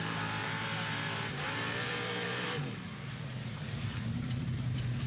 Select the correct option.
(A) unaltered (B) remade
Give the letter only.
B